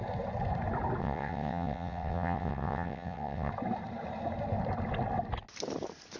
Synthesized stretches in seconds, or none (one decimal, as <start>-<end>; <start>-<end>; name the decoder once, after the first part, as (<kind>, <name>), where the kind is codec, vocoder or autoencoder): 1.0-3.5 (vocoder, WaveNeXt)